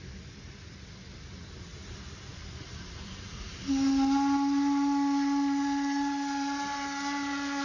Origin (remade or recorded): recorded